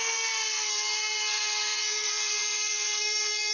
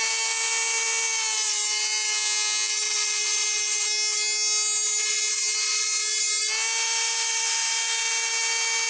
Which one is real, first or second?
second